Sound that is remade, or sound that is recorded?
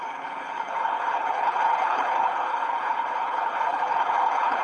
remade